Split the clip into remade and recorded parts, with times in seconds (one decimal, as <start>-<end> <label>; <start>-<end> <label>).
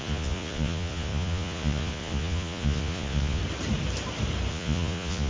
0.0-3.4 remade; 3.4-4.5 recorded; 4.5-5.3 remade